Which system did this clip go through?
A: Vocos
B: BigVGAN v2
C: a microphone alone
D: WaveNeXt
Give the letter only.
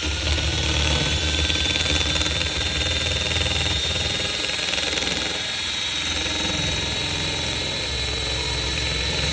B